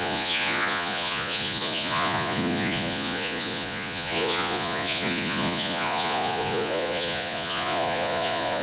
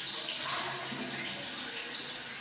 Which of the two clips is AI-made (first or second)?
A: first